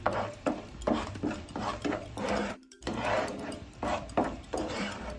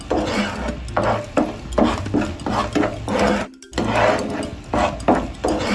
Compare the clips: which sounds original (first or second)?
second